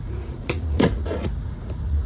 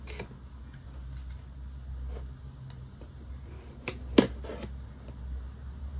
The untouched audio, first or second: second